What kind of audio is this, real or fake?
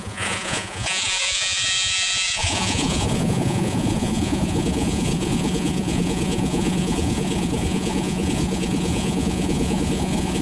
fake